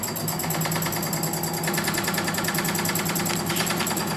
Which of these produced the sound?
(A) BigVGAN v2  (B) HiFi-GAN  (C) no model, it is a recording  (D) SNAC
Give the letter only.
C